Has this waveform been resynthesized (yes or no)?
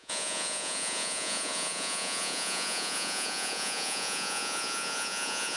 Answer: yes